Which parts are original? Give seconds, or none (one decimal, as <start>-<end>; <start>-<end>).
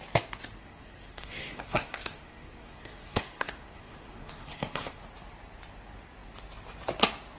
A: 0.0-0.6; 5.0-7.4